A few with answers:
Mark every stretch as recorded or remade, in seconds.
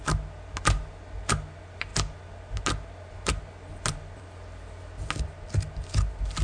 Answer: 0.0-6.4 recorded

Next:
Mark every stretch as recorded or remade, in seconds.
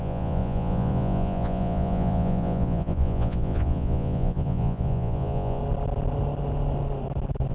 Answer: 0.0-5.6 remade; 5.6-7.5 recorded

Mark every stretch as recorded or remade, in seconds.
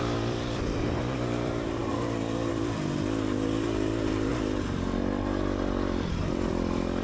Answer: 0.0-1.8 remade; 1.8-2.5 recorded; 2.5-4.3 remade; 4.3-6.2 recorded; 6.2-7.0 remade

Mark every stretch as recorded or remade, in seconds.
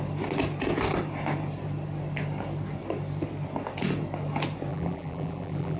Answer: 0.0-4.7 recorded; 4.7-5.8 remade